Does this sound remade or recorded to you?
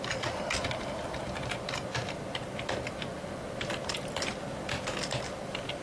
recorded